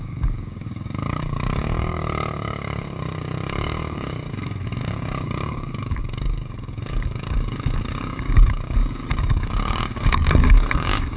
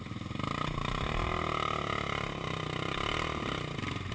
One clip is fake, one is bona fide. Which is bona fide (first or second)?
second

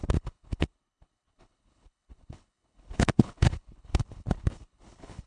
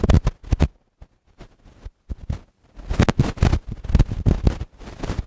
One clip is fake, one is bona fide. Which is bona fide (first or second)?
second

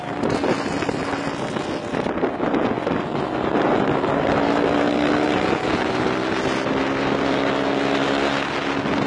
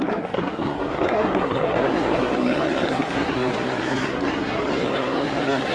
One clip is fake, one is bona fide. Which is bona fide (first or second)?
first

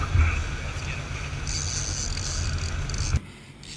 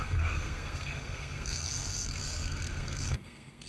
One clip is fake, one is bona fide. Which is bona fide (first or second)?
first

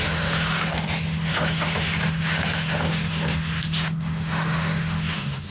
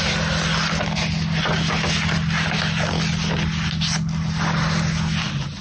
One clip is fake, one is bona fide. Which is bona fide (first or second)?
second